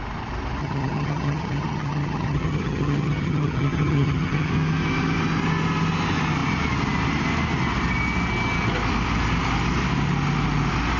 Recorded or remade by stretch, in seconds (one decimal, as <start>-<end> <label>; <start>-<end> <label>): 0.0-0.6 recorded; 0.6-4.5 remade; 4.5-11.0 recorded